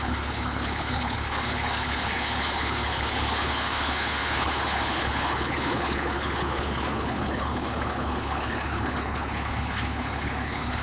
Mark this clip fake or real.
fake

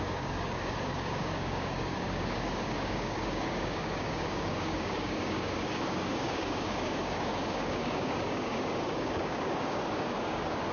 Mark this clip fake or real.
fake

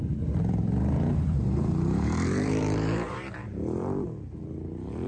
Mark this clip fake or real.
fake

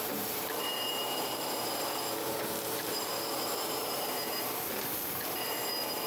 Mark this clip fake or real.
fake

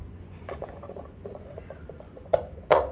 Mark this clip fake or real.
fake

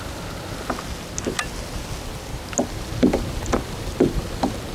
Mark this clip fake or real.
real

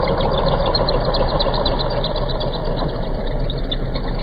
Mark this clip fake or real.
real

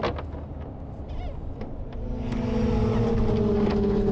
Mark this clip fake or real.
real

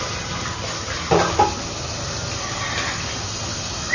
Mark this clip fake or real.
real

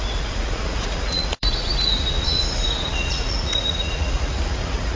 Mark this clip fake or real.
fake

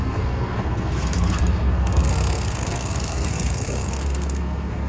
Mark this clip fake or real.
fake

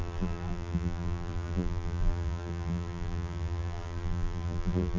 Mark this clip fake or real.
fake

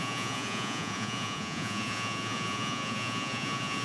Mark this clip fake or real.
fake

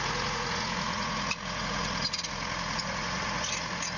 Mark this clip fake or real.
fake